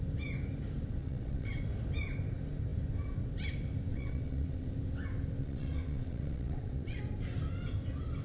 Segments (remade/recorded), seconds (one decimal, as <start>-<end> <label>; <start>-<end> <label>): 0.0-1.0 recorded; 1.0-1.6 remade; 1.6-3.9 recorded; 3.9-4.7 remade; 4.7-5.4 recorded; 5.4-7.0 remade; 7.0-8.2 recorded